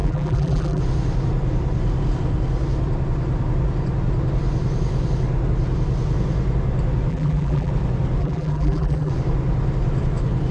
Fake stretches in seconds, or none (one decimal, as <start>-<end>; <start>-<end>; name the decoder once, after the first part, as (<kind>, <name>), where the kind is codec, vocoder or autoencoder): 0.0-0.8 (vocoder, BigVGAN v2); 7.1-7.7; 8.2-9.1